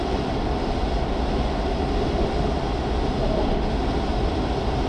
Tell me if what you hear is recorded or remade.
recorded